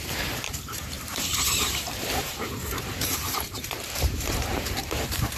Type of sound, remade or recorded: remade